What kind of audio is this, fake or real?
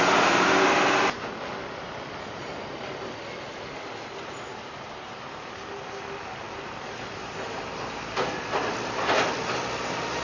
real